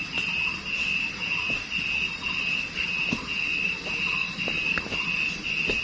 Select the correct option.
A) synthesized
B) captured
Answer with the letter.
B